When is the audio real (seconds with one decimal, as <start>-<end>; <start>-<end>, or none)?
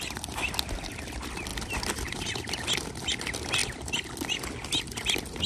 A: 0.0-5.5